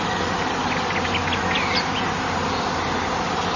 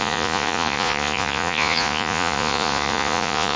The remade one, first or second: second